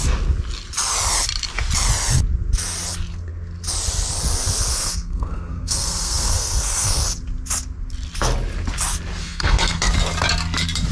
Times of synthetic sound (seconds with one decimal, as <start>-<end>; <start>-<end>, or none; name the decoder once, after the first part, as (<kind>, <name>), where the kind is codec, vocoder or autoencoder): 4.7-7.0 (codec, SNAC); 9.2-9.9

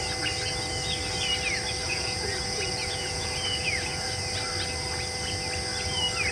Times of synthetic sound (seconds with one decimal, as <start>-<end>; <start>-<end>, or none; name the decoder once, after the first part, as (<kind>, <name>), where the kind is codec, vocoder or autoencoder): 1.8-4.2 (vocoder, Vocos)

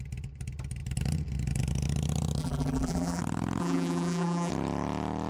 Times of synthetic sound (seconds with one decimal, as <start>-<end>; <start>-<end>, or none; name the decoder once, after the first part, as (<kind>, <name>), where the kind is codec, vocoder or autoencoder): 2.4-3.2 (vocoder, BigVGAN v2); 3.6-4.5

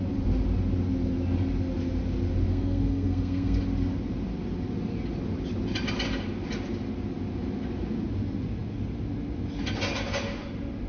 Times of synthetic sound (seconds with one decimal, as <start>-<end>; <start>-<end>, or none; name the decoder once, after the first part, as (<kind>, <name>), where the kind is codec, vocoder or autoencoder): 2.5-3.6 (codec, SNAC)

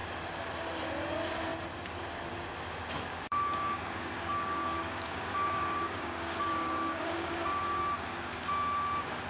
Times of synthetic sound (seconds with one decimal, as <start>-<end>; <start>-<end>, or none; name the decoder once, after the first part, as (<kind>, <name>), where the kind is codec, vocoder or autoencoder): 3.1-7.8 (codec, DAC)

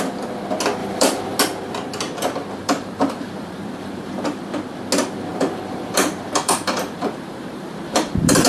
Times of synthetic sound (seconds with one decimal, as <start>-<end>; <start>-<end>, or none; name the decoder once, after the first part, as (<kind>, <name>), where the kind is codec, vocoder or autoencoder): 0.8-1.4 (vocoder, BigVGAN v2); 2.6-4.4; 5.3-8.5

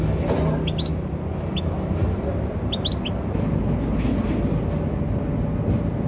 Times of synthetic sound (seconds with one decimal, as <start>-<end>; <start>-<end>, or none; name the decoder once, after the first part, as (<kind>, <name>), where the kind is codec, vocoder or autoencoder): none